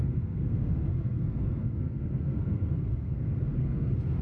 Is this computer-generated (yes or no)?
yes